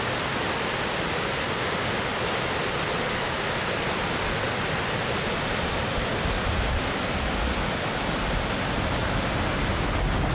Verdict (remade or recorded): recorded